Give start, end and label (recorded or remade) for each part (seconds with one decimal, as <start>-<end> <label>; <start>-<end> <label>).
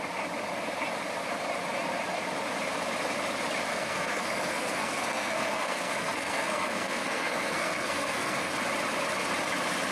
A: 0.0-3.7 recorded; 3.7-8.5 remade; 8.5-9.9 recorded